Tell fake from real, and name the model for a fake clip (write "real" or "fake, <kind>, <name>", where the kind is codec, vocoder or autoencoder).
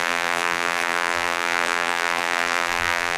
fake, vocoder, BigVGAN v2